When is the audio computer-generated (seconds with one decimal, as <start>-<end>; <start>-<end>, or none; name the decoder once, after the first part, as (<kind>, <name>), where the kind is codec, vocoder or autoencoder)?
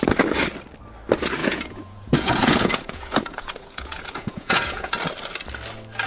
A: 1.4-4.9 (vocoder, Vocos)